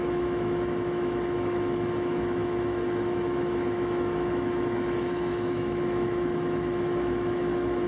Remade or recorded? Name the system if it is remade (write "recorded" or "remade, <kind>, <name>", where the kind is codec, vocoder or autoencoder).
remade, autoencoder, DAC-VAE